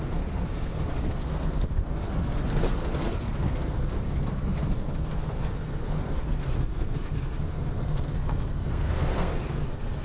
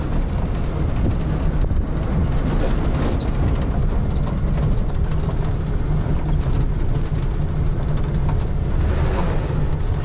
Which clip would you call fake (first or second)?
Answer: first